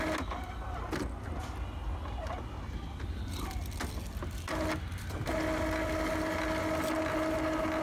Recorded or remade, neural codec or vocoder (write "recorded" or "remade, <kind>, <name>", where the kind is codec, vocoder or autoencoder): recorded